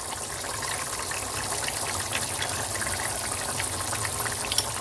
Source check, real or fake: real